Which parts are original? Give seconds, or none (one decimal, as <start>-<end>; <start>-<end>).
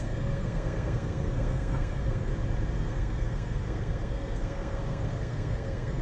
2.3-2.8